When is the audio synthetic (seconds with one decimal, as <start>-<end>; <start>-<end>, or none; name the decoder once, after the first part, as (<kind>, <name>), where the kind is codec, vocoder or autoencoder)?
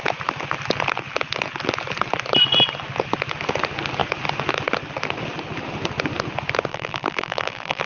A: 6.7-7.9 (vocoder, BigVGAN v2)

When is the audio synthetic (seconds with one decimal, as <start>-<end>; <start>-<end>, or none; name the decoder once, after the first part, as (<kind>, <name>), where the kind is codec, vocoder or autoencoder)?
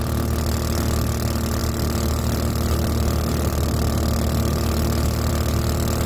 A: 1.6-5.3 (vocoder, BigVGAN v2)